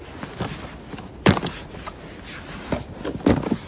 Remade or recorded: recorded